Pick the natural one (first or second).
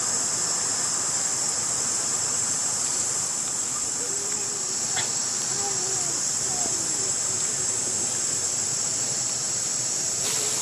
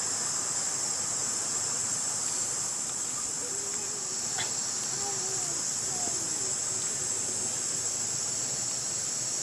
second